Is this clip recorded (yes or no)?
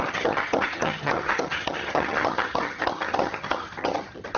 no